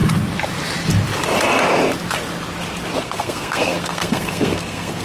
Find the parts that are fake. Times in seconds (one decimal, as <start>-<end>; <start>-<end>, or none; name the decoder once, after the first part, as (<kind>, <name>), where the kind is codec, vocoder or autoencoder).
3.0-5.0 (codec, SNAC)